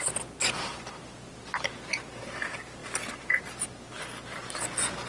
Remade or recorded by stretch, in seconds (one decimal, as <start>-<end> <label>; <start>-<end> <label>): 0.0-5.1 recorded